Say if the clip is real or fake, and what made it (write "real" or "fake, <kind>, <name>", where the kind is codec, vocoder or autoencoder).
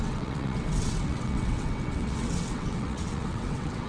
fake, vocoder, WaveNeXt